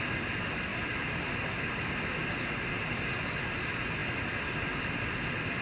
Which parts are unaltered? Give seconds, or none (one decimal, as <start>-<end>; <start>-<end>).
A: 0.0-5.6